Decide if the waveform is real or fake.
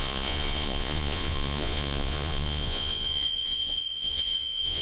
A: fake